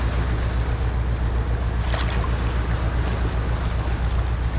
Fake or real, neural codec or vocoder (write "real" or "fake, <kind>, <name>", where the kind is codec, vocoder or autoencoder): real